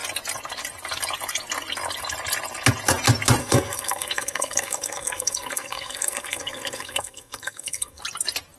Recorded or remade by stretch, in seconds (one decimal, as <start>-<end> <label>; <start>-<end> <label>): 0.0-3.4 recorded; 3.4-8.0 remade; 8.0-8.6 recorded